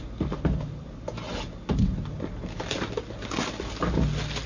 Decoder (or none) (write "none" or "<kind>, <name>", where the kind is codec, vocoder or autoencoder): none